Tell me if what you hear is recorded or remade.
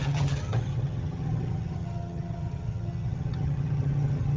remade